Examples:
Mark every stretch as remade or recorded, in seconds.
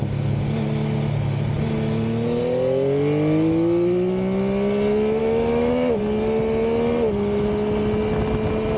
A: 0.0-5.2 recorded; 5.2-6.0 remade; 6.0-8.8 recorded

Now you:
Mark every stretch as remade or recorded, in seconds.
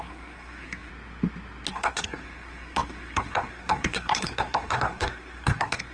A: 0.0-0.9 remade; 0.9-1.7 recorded; 1.7-5.9 remade